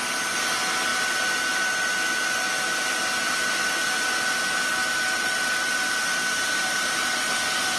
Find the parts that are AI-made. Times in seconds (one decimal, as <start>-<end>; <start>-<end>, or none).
none